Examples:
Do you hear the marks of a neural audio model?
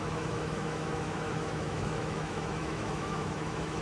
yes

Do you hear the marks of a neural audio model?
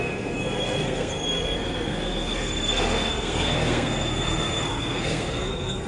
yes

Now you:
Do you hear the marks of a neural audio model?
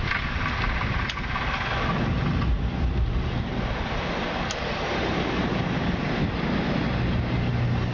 no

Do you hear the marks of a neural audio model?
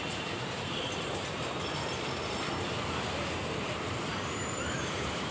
yes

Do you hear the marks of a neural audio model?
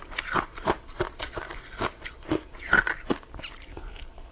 no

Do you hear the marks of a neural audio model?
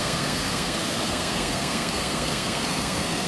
yes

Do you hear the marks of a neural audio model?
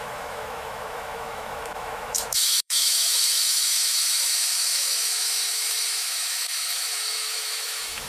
yes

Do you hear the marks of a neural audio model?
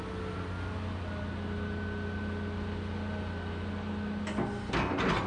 no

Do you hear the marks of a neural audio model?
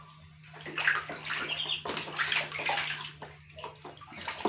no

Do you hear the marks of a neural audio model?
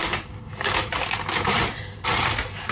no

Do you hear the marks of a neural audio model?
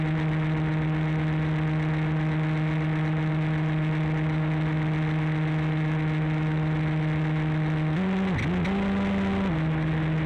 no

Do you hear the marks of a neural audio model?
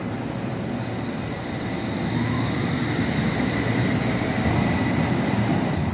no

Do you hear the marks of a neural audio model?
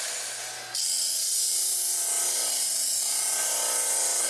no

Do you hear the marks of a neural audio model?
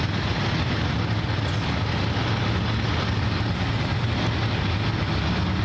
no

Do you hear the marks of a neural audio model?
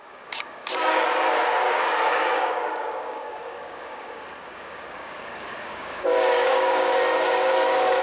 yes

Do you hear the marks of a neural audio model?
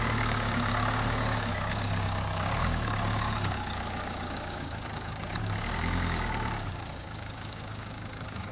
yes